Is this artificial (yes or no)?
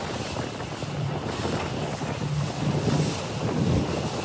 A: no